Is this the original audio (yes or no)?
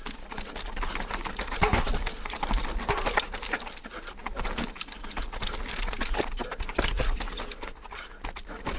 yes